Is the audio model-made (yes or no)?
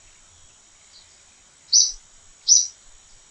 no